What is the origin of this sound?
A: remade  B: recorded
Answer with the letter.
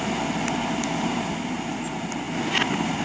B